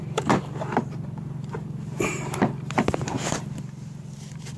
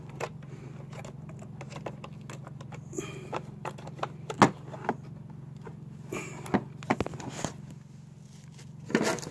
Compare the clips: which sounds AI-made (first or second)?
first